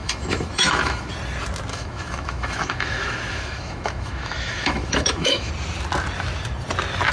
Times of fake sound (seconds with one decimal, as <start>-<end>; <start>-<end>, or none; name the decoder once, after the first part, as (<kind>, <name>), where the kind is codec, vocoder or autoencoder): 0.0-1.1 (autoencoder, DAC-VAE); 1.7-5.5

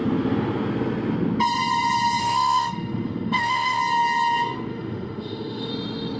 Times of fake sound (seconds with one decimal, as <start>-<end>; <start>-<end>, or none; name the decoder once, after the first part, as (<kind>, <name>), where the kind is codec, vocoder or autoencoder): 2.2-3.8 (autoencoder, DAC-VAE); 4.7-5.7